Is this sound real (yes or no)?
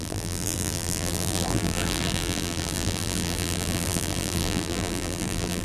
no